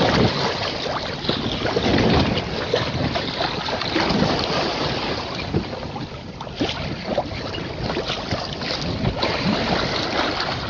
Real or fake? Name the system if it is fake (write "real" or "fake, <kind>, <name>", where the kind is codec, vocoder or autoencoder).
real